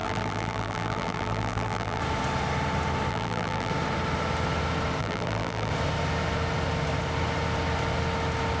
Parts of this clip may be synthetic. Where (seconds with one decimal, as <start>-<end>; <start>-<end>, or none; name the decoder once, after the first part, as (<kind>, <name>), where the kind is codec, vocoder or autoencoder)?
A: 0.0-2.0 (vocoder, BigVGAN v2); 3.1-3.7; 5.0-5.7